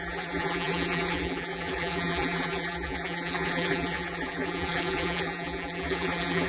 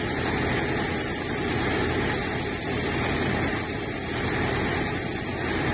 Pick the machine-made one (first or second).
first